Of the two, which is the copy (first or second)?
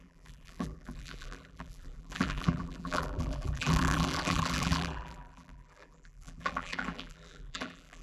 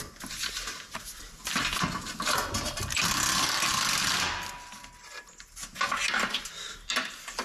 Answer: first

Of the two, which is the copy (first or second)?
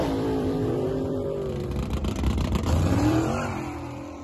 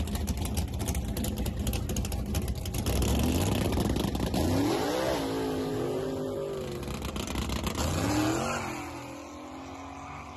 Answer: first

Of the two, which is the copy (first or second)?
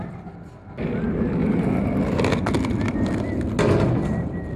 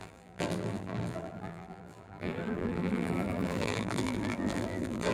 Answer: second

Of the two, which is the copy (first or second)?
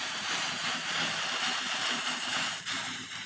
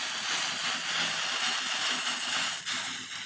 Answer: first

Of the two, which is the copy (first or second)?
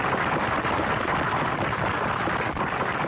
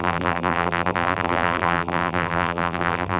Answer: second